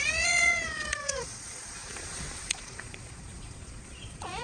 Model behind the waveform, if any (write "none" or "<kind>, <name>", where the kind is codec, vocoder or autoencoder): vocoder, Vocos